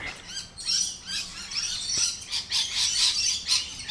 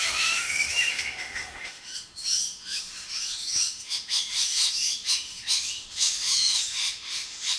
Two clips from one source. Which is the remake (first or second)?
second